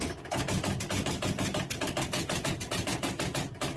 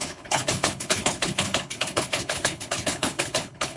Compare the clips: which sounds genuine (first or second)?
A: first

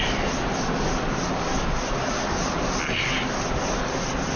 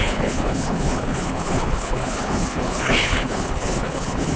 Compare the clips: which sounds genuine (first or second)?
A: first